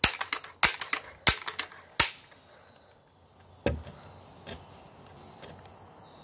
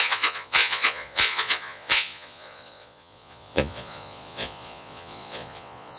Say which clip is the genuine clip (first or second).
first